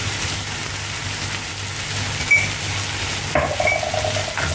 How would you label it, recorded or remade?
recorded